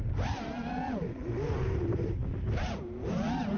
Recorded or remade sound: recorded